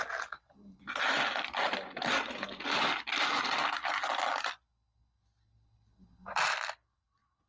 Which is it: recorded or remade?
recorded